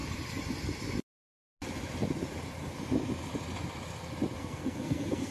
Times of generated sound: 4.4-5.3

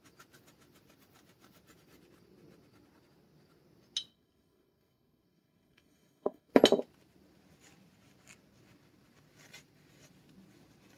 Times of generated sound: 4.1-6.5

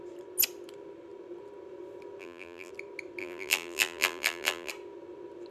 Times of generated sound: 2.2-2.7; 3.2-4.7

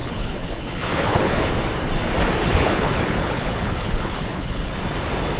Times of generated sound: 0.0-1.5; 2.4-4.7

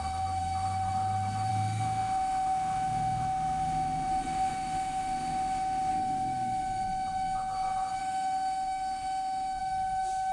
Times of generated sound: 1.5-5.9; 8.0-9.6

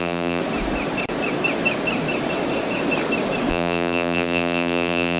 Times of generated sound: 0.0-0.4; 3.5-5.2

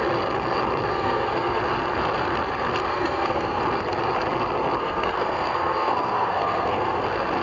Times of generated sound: 0.9-1.6; 2.9-3.6; 4.8-7.0